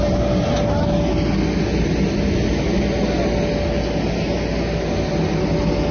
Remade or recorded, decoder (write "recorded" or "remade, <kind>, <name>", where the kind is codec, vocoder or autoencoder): recorded